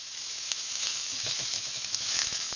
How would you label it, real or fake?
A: fake